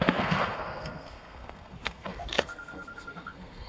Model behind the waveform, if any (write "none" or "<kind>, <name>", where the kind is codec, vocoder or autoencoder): codec, SNAC